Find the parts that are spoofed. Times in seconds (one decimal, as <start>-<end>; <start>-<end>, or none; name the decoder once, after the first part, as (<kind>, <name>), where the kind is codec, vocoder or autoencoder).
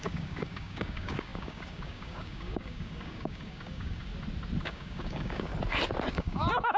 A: 0.0-4.1 (codec, DAC); 4.6-5.5; 6.1-6.8